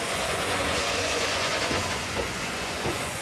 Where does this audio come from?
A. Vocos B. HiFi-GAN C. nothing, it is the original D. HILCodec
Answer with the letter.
A